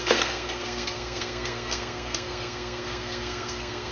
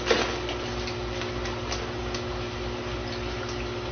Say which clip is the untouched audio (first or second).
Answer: second